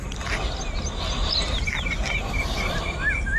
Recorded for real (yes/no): yes